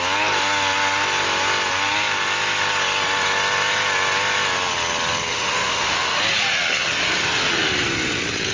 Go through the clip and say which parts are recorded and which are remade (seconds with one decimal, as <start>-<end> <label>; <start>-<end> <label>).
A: 0.0-5.3 recorded; 5.3-6.2 remade; 6.2-8.5 recorded